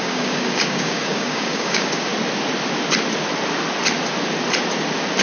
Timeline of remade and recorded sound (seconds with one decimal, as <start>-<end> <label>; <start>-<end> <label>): 0.0-2.1 remade; 2.1-5.2 recorded